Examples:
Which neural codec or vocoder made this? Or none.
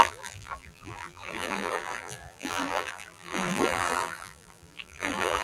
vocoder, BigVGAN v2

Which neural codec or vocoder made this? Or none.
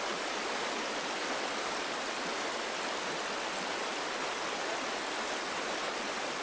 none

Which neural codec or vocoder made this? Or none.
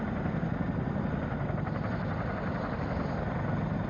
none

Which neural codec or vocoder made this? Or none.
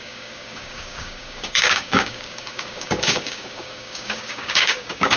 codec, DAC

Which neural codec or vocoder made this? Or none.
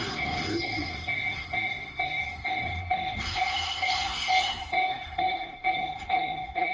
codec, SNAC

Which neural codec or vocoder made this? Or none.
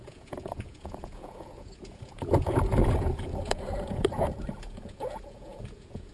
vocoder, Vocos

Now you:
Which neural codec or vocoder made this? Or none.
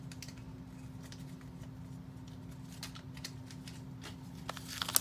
none